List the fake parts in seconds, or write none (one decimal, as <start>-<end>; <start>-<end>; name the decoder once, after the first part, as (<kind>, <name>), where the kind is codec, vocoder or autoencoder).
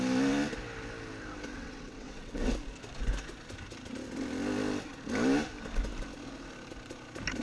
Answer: 1.5-2.5 (vocoder, WaveNeXt)